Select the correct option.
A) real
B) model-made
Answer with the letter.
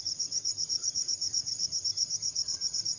B